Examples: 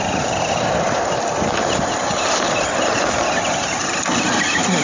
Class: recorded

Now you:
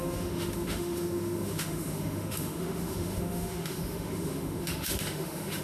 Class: remade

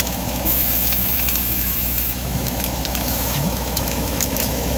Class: remade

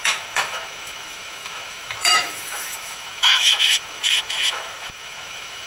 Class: remade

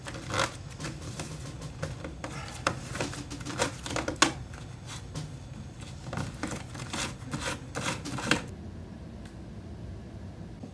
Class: recorded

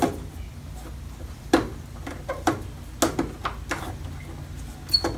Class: recorded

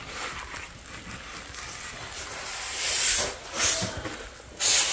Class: recorded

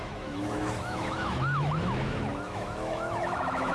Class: remade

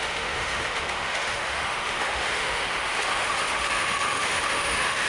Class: remade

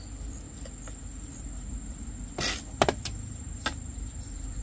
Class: recorded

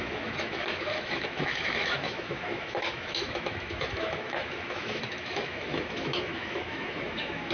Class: remade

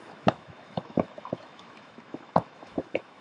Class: remade